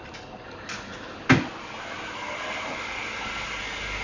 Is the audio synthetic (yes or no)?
no